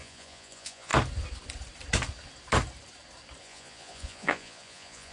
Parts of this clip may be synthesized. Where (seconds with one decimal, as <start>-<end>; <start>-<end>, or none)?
0.0-0.9; 3.4-5.1